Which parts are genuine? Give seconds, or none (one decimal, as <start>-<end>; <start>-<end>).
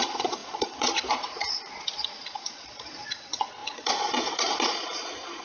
none